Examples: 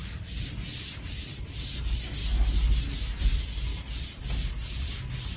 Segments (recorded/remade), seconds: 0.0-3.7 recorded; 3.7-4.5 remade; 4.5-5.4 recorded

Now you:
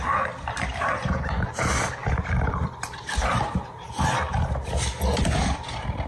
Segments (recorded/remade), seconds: 0.0-2.0 recorded; 2.0-3.6 remade; 3.6-6.1 recorded

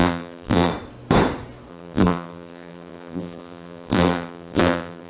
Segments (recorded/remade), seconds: 0.0-0.7 remade; 0.7-1.7 recorded; 1.7-5.1 remade

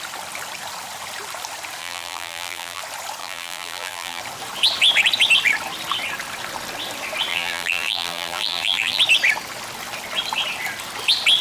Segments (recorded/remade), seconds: 0.0-1.8 recorded; 1.8-2.8 remade; 2.8-3.2 recorded; 3.2-4.2 remade; 4.2-7.3 recorded; 7.3-9.0 remade; 9.0-11.4 recorded

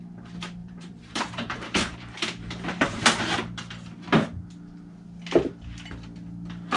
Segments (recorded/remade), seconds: 0.0-0.6 recorded; 0.6-3.2 remade; 3.2-6.8 recorded

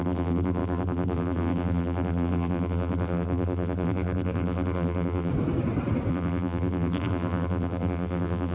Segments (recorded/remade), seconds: 0.0-5.3 remade; 5.3-6.1 recorded; 6.1-8.5 remade

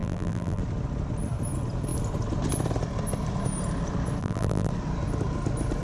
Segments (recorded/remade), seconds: 0.0-0.6 remade; 0.6-4.2 recorded; 4.2-4.7 remade; 4.7-5.8 recorded

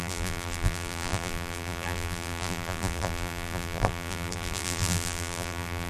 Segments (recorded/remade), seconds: 0.0-5.9 remade